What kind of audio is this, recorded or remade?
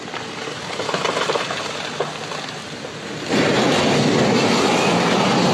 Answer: recorded